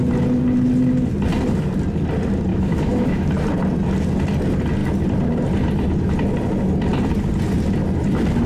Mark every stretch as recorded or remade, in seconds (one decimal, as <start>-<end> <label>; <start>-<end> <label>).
0.0-2.5 recorded; 2.5-3.3 remade; 3.3-8.5 recorded